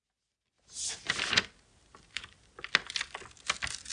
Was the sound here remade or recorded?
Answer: recorded